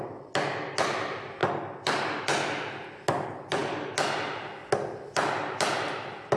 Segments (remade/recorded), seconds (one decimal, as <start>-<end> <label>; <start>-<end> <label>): 0.0-6.4 recorded